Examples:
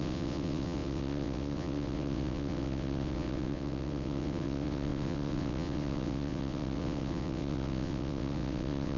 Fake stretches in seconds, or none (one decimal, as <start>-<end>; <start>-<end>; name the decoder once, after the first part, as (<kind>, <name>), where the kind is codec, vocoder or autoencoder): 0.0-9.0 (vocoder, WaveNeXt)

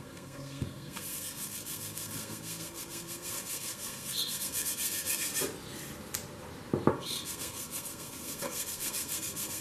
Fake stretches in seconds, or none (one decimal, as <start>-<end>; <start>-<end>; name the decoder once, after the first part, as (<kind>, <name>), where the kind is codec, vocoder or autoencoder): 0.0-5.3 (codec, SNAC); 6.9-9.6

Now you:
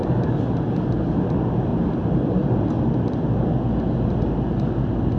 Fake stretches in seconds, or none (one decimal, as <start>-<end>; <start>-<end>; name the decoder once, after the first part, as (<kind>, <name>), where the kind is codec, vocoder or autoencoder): 1.7-3.5 (vocoder, BigVGAN v2)